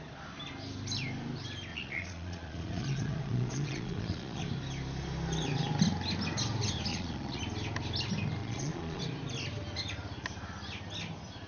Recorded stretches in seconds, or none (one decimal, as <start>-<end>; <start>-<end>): 0.0-1.7; 4.4-6.9; 7.4-8.4; 9.0-11.5